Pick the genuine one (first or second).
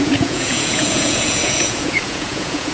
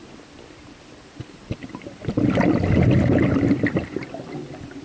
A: second